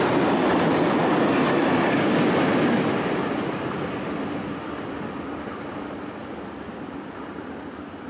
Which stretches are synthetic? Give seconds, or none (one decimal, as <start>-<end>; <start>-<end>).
0.0-8.1